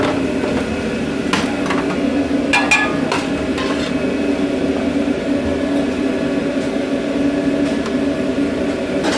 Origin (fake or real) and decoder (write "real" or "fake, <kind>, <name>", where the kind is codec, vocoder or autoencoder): real